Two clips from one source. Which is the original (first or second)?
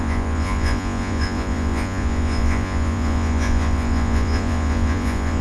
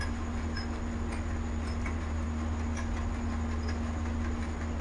second